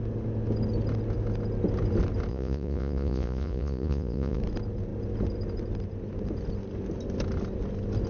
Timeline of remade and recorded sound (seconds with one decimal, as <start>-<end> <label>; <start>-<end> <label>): 0.0-2.3 recorded; 2.3-4.4 remade; 4.4-8.1 recorded

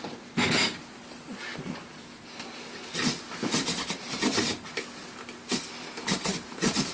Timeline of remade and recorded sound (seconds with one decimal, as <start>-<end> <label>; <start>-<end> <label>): 0.0-6.9 recorded

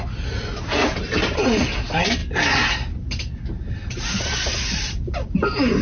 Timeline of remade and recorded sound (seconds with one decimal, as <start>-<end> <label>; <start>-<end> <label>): 0.0-5.8 recorded

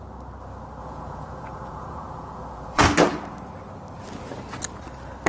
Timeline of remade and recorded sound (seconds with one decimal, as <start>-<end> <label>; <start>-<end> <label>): 0.0-0.8 recorded; 0.8-2.8 remade; 2.8-5.3 recorded

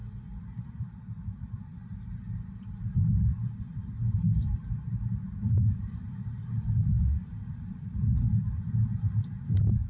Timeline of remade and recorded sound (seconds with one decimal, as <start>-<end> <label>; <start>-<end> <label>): 0.0-9.9 recorded

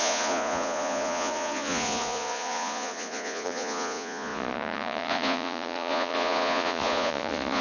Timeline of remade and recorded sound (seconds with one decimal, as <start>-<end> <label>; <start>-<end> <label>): 0.0-7.6 remade

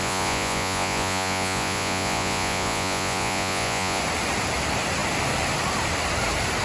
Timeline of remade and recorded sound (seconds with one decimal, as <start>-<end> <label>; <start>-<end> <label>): 0.0-4.0 remade; 4.0-6.6 recorded

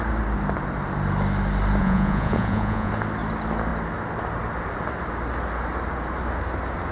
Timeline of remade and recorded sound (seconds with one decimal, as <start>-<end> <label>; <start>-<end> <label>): 0.0-1.8 recorded; 1.8-2.9 remade; 2.9-6.9 recorded